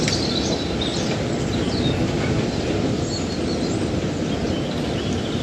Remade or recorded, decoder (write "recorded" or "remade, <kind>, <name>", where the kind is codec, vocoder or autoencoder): recorded